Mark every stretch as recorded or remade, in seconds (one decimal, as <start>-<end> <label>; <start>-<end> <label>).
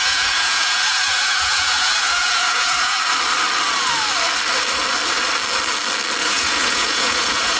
0.0-3.0 remade; 3.0-6.2 recorded; 6.2-7.6 remade